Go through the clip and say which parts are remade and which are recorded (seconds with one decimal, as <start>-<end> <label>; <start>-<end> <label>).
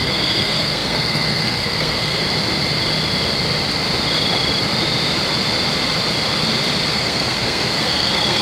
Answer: 0.0-2.2 remade; 2.2-6.9 recorded; 6.9-8.4 remade